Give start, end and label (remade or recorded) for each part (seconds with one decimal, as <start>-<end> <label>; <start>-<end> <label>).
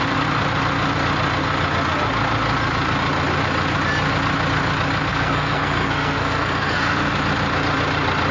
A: 0.0-5.1 recorded; 5.1-7.1 remade; 7.1-8.3 recorded